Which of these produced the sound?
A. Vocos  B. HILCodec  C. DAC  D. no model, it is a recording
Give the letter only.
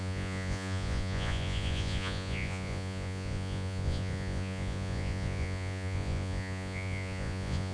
A